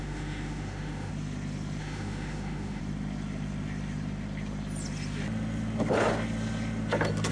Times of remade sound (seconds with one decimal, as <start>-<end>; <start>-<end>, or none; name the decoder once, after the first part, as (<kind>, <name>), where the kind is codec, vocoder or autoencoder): 0.0-1.1 (autoencoder, DAC-VAE); 1.8-2.8

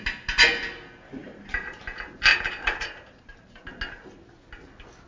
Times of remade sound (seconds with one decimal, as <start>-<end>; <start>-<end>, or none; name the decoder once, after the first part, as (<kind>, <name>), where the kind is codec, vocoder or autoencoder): 1.2-1.8 (vocoder, BigVGAN v2); 2.3-3.6

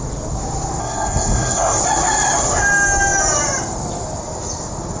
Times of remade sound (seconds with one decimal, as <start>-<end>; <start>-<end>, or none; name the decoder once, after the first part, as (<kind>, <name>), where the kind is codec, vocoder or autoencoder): 0.8-1.8 (codec, SNAC)

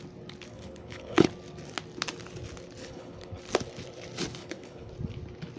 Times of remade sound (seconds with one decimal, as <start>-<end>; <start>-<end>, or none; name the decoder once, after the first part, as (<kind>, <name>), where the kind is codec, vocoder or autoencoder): 0.5-1.3 (codec, HILCodec); 2.8-3.4; 4.4-4.9

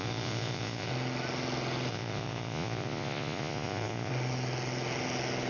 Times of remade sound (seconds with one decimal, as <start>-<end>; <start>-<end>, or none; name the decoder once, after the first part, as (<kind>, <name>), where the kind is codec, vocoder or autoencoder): 0.0-0.9 (vocoder, Vocos); 1.9-4.1

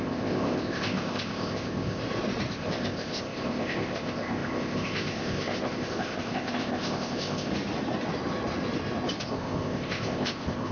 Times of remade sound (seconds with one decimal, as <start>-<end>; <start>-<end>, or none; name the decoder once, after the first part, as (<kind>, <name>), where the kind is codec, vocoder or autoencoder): 0.0-2.0 (codec, ZipCodec); 2.5-7.5; 9.2-10.7

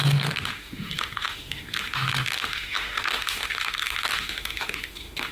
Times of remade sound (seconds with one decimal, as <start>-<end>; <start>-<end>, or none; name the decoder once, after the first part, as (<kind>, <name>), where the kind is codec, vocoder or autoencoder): 0.0-5.3 (autoencoder, DAC-VAE)